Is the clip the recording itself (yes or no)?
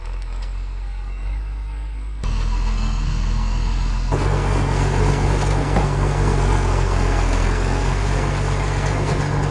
no